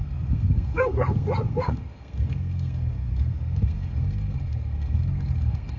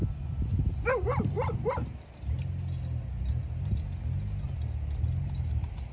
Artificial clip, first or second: first